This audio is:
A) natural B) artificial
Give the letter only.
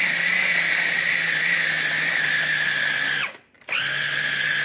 A